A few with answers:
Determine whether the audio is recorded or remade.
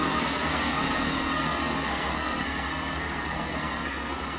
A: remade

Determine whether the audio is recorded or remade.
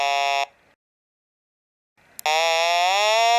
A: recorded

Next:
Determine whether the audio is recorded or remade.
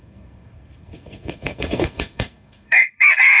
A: remade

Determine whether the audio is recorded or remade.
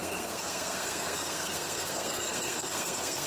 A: remade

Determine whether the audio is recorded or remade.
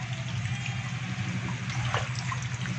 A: recorded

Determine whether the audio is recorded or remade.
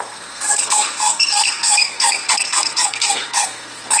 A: remade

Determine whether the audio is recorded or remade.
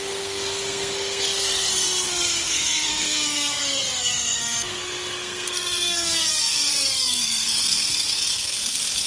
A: remade